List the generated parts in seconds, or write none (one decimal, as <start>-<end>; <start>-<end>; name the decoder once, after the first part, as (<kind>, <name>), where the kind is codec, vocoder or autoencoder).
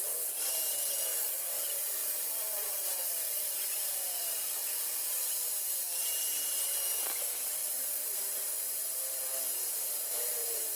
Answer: 0.0-10.8 (vocoder, BigVGAN v2)